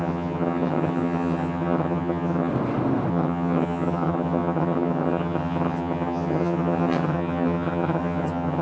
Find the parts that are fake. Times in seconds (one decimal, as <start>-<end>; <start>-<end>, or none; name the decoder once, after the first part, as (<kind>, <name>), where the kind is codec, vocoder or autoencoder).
0.0-2.5 (vocoder, HiFi-GAN); 3.1-8.6